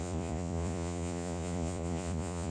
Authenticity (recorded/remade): remade